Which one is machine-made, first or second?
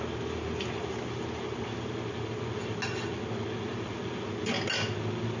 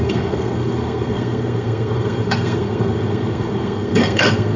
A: second